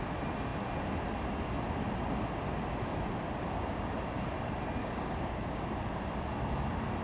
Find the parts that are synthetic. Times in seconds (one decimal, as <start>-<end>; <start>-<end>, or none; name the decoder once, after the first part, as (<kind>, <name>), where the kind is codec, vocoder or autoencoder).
4.8-5.6 (codec, DAC)